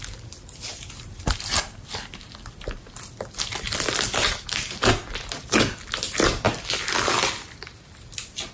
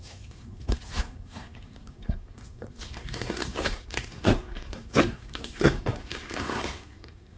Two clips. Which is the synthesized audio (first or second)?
second